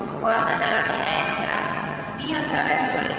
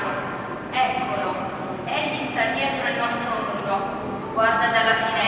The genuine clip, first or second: second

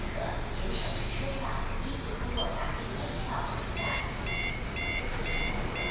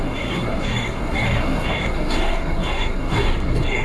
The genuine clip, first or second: first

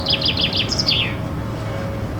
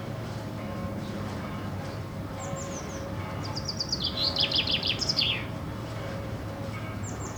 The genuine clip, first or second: first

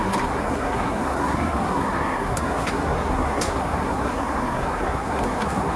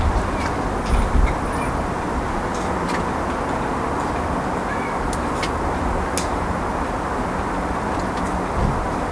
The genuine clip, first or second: second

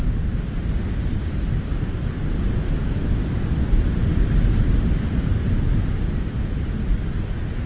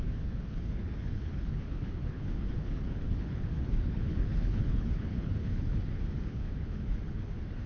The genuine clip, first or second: first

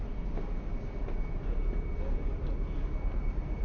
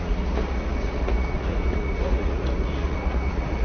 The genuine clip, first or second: first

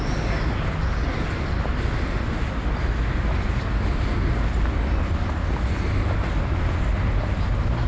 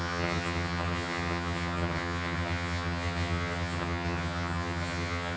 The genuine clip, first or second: first